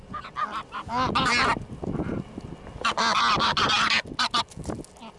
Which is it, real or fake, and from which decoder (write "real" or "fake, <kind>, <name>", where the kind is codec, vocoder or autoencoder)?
real